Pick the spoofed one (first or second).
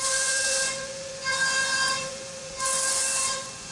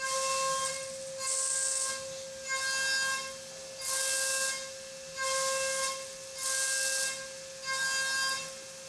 first